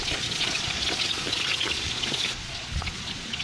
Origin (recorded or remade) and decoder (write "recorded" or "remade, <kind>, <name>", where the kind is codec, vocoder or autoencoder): remade, vocoder, Vocos